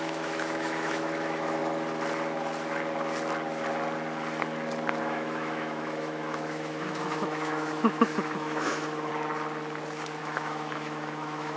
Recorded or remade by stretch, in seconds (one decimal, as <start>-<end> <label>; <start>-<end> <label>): 0.0-1.6 remade; 1.6-5.0 recorded; 5.0-9.1 remade; 9.1-10.2 recorded; 10.2-11.6 remade